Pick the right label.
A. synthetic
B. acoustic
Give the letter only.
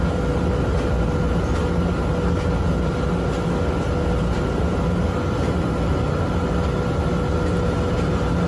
B